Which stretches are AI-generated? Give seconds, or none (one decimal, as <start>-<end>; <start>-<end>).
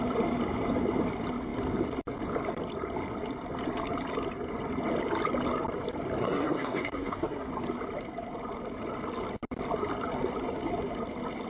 6.2-7.5